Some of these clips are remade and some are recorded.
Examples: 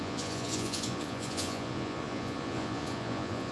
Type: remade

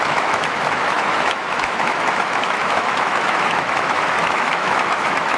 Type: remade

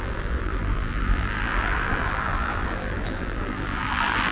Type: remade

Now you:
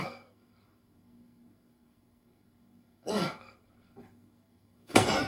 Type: remade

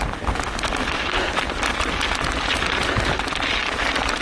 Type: recorded